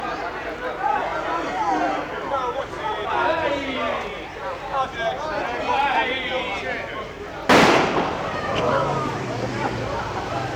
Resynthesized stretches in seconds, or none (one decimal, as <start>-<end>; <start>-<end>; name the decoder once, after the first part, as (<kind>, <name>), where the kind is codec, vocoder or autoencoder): 0.0-6.5 (vocoder, BigVGAN v2); 7.3-8.5; 9.0-10.6